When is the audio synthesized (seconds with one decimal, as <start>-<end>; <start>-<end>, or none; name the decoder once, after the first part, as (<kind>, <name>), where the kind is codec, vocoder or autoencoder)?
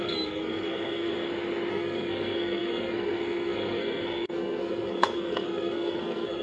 0.0-1.1 (codec, SNAC); 1.7-6.4